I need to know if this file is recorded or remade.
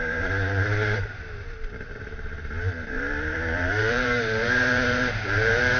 remade